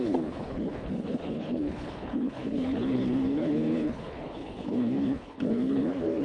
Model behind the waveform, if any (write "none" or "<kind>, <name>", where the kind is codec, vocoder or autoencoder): codec, HILCodec